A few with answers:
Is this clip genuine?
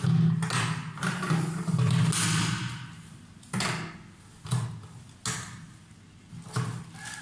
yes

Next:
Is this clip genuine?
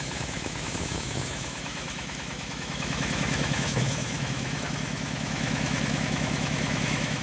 no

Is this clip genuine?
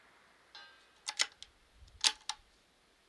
yes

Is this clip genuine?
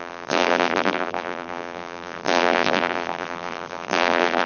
no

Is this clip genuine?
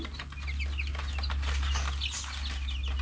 yes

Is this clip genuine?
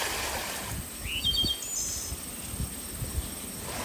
yes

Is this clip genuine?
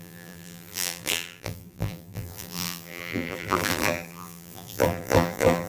no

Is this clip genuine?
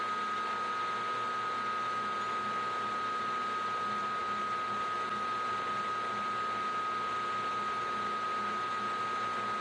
yes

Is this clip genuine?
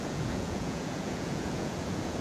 no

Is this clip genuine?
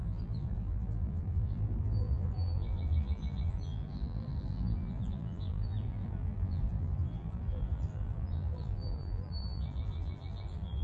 no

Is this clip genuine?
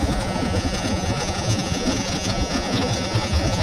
no